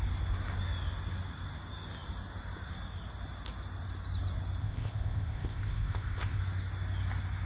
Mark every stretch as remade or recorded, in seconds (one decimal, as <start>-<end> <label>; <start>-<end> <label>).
0.0-4.6 recorded; 4.6-6.4 remade; 6.4-7.5 recorded